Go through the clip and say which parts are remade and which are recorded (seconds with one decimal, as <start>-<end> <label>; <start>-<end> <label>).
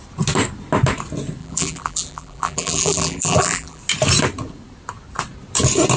0.0-1.4 recorded; 1.4-3.8 remade; 3.8-6.0 recorded